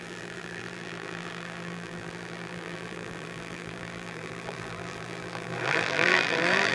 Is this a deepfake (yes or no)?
yes